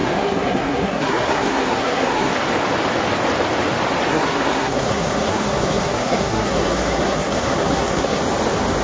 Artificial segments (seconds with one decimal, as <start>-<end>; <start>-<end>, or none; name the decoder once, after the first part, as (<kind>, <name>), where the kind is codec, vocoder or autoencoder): 0.0-2.3 (codec, SNAC); 4.1-8.2